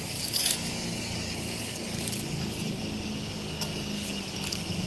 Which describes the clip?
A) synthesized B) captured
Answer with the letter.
A